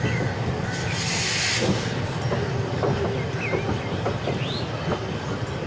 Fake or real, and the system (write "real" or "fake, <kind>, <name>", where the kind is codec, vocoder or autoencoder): real